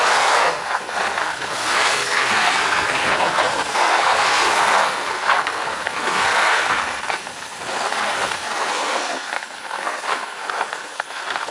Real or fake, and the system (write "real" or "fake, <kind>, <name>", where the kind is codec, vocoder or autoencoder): fake, codec, SNAC